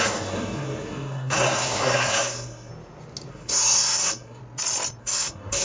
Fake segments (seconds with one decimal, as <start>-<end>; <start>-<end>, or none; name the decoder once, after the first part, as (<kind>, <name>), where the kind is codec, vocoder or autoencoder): 0.0-2.7 (codec, SNAC); 3.3-4.4; 5.0-5.6